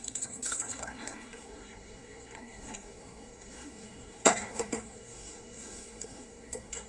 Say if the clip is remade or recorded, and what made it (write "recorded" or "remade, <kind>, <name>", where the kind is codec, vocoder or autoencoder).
remade, codec, SNAC